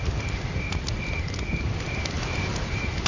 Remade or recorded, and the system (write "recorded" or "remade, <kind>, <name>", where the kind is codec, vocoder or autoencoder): recorded